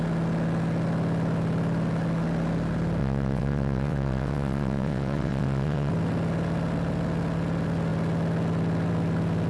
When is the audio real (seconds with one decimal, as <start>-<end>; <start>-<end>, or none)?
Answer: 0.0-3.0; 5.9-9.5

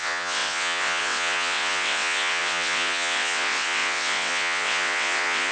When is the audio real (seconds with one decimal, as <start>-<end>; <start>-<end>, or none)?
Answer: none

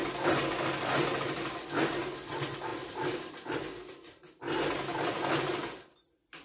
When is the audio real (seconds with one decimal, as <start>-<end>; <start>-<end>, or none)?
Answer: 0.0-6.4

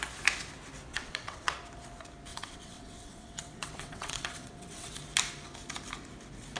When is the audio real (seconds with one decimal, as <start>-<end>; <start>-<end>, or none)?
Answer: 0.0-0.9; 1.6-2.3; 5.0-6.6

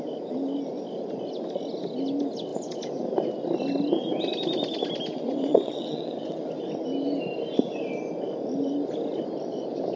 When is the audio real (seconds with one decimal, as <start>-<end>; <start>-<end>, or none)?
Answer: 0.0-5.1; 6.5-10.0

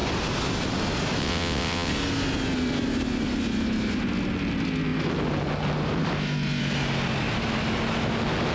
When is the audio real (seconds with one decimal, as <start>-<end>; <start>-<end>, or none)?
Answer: 0.0-1.2; 1.9-8.5

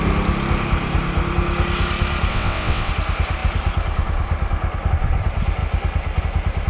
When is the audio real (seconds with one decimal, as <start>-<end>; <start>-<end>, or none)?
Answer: 0.0-2.3; 2.9-6.7

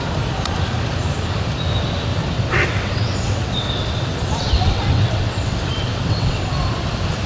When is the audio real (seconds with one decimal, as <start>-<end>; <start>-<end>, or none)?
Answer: 0.0-2.1; 6.5-7.3